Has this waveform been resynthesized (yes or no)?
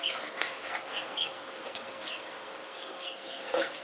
yes